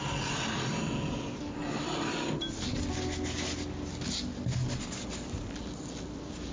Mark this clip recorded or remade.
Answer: recorded